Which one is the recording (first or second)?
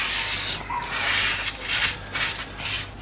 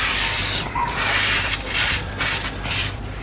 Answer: first